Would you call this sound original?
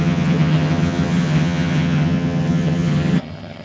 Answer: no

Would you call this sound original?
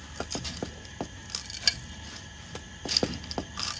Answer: yes